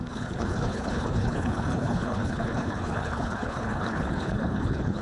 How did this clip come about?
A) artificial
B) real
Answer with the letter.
A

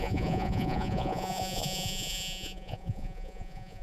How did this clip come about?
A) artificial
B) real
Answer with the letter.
A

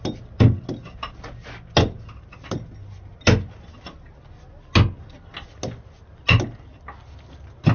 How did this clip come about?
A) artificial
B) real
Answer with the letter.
B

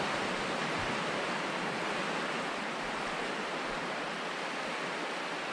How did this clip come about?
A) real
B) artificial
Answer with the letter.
A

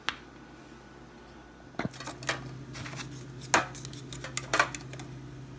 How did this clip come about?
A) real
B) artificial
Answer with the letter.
A